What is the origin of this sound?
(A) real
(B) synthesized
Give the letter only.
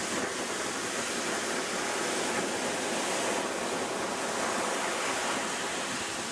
A